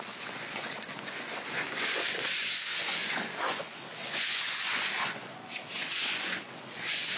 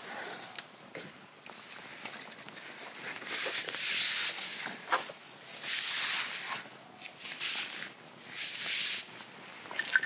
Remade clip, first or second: first